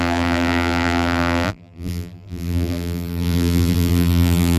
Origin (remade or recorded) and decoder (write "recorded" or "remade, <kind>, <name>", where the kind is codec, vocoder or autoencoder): remade, vocoder, BigVGAN v2